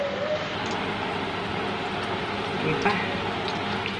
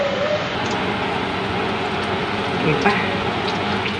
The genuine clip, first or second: first